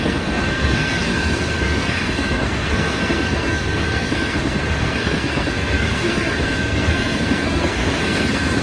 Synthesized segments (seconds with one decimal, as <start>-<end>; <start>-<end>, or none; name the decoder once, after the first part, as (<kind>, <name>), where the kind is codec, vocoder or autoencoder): 0.0-8.6 (codec, SNAC)